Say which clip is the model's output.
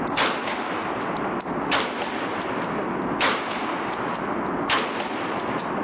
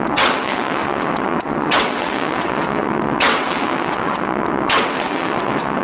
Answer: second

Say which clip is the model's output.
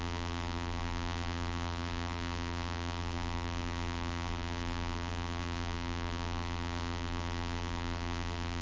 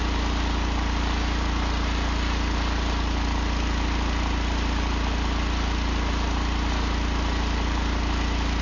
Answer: first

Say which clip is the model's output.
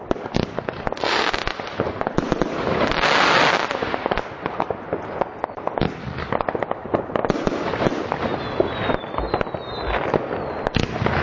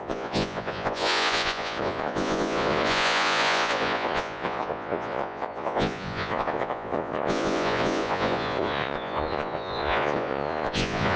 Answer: second